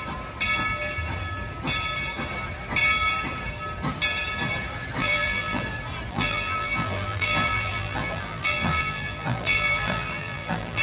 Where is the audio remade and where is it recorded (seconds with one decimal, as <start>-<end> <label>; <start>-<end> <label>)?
0.0-5.0 recorded; 5.0-5.6 remade; 5.6-6.1 recorded; 6.1-10.8 remade